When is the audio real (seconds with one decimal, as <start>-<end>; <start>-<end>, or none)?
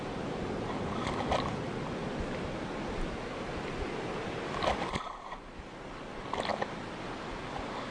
0.0-7.9